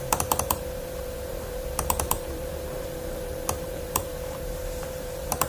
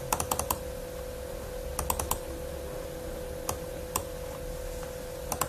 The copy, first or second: first